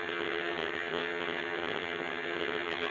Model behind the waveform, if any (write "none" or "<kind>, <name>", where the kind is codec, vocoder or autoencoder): vocoder, HiFi-GAN